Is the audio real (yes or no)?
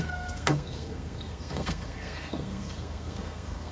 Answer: no